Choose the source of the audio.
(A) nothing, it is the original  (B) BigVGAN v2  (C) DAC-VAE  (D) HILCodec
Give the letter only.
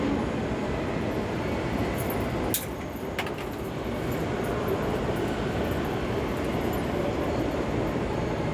A